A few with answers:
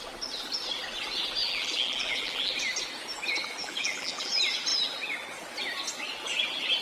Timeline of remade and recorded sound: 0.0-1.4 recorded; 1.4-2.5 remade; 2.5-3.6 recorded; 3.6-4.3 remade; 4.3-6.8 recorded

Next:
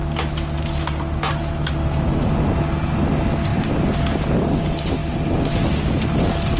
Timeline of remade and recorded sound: 0.0-3.5 recorded; 3.5-4.2 remade; 4.2-6.6 recorded

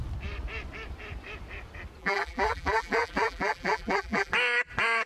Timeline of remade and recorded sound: 0.0-2.0 recorded; 2.0-4.3 remade; 4.3-5.1 recorded

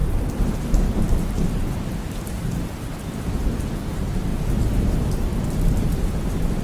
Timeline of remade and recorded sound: 0.0-3.6 remade; 3.6-6.6 recorded

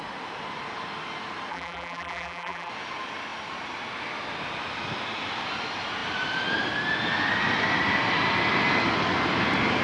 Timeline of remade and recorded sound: 0.0-1.5 recorded; 1.5-2.7 remade; 2.7-9.8 recorded

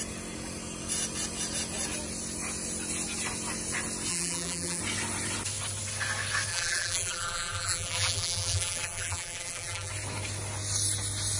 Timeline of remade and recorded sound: 0.0-4.1 recorded; 4.1-4.8 remade; 4.8-6.5 recorded; 6.5-9.9 remade; 9.9-11.4 recorded